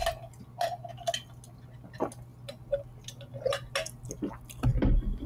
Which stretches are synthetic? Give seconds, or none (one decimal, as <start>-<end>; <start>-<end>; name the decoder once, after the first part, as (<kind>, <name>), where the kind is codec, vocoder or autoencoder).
none